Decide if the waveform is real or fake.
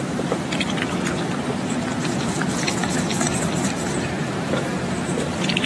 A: fake